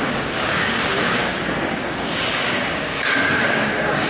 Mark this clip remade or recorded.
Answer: remade